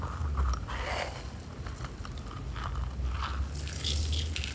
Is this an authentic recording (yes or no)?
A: yes